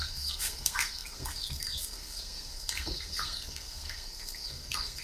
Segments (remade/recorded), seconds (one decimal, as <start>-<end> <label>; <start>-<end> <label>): 0.0-5.0 remade